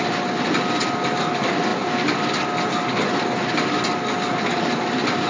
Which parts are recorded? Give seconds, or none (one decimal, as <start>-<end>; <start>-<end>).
0.0-5.3